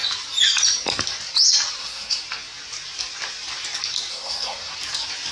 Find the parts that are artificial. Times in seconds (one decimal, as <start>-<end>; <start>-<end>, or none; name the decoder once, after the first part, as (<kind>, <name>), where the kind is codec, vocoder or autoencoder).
1.8-2.2 (codec, SNAC); 4.1-4.7